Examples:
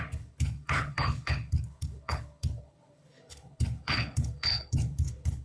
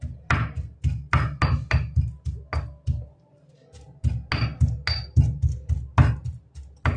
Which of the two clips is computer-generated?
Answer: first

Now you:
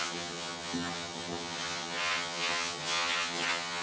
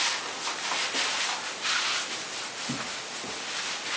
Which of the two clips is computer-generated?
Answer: first